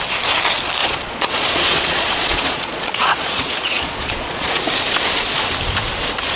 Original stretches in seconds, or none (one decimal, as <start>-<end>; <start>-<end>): 0.0-0.8; 4.6-6.4